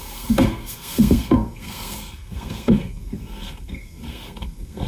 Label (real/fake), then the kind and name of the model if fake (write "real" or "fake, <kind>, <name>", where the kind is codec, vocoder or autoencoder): fake, codec, SNAC